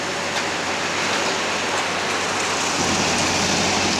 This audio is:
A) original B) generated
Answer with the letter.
A